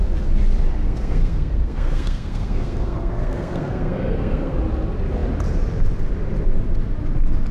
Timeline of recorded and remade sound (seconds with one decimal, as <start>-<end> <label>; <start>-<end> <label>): 0.0-0.8 recorded; 0.8-4.6 remade; 4.6-7.5 recorded

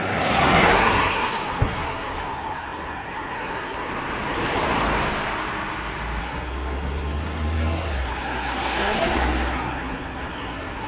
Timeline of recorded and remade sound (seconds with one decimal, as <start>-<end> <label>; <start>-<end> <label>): 0.0-3.9 remade; 3.9-6.2 recorded; 6.2-10.9 remade

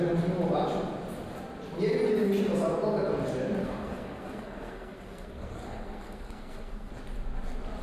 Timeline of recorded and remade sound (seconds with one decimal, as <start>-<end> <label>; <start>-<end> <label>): 0.0-3.6 recorded; 3.6-6.9 remade; 6.9-7.8 recorded

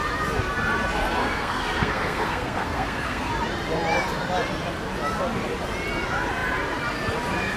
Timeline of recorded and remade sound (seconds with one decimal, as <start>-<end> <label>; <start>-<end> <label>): 0.0-1.2 recorded; 1.2-3.3 remade; 3.3-7.6 recorded

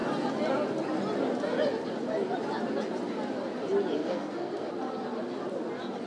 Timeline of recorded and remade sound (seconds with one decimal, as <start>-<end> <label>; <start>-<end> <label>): 0.0-4.0 recorded; 4.0-4.7 remade; 4.7-6.1 recorded